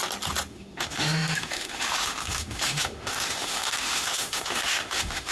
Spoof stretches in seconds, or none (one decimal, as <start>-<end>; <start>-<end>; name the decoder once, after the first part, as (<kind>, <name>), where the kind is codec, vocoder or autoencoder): 0.5-5.3 (autoencoder, DAC-VAE)